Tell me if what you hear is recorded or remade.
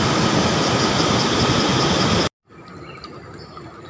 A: recorded